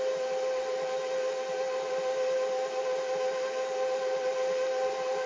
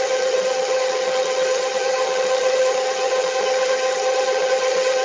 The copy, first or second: second